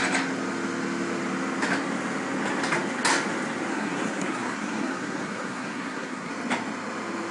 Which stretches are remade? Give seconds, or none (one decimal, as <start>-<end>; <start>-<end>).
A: 3.7-6.3